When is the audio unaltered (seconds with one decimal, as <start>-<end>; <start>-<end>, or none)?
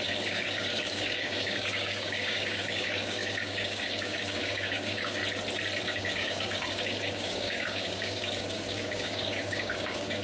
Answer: 5.2-5.8